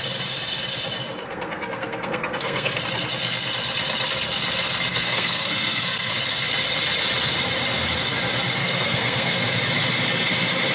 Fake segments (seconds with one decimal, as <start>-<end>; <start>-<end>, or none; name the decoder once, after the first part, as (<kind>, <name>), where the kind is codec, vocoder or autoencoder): 1.2-2.8 (codec, SNAC); 4.9-6.1; 8.6-9.4